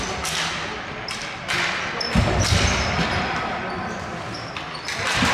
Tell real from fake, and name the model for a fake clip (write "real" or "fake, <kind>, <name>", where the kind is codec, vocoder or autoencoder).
real